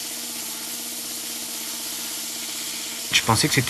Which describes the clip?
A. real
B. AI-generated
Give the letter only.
A